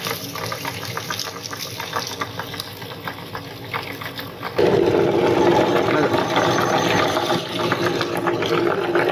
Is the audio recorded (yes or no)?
yes